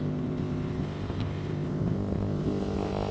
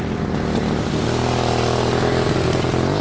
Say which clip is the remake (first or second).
first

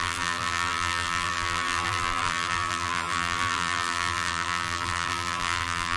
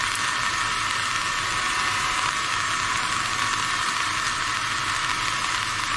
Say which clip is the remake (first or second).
first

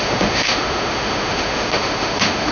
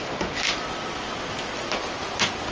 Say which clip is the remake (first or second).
first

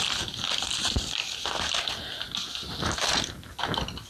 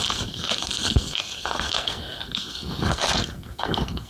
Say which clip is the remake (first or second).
second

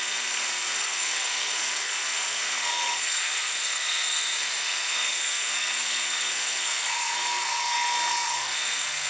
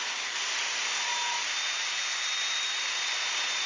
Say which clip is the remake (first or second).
first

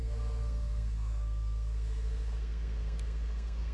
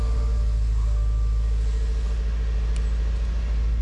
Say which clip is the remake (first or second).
first